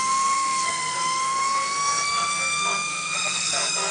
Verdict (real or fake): fake